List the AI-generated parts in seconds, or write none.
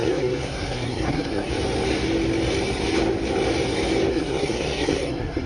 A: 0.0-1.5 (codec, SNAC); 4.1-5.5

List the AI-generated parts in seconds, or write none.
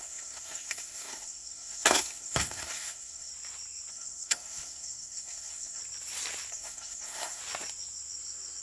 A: 0.0-3.3 (codec, SNAC); 3.9-5.8; 6.5-7.4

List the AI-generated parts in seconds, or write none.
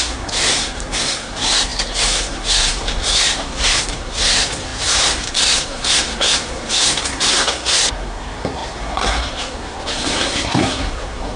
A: 0.0-11.4 (codec, SNAC)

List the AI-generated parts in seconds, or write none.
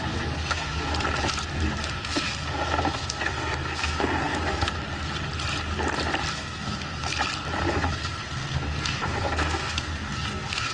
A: 0.0-0.9 (codec, SNAC); 1.8-4.7; 6.3-7.1; 7.7-10.7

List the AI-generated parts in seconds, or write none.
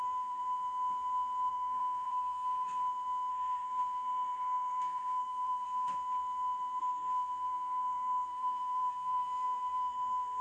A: 0.0-0.4 (codec, SNAC); 1.5-2.8; 3.3-5.9; 6.8-10.4